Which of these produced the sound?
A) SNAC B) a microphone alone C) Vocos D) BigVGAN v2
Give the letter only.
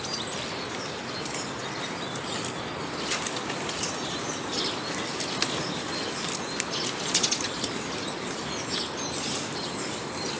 B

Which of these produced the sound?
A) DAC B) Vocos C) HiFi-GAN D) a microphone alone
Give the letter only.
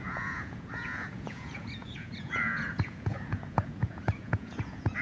B